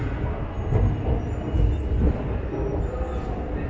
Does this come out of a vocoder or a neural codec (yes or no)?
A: no